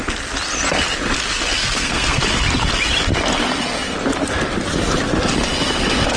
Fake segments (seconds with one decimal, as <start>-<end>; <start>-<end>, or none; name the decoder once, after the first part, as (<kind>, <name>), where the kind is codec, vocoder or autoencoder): 1.6-2.2 (codec, SNAC)